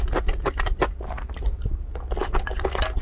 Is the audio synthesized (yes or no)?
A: no